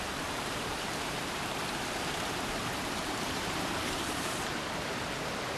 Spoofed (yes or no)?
yes